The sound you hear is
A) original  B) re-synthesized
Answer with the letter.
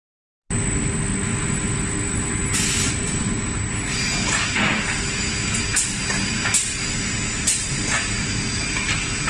A